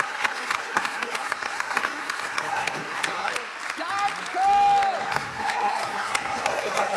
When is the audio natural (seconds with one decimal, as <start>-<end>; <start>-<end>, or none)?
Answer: 3.3-5.0